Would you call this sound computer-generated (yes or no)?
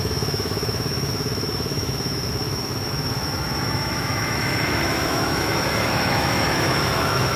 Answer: yes